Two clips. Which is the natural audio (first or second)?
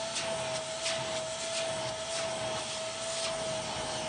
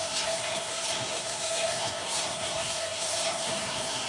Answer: first